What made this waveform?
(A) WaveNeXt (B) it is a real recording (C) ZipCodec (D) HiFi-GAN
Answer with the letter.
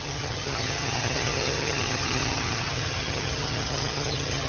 D